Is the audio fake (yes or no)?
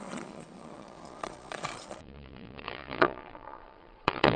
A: yes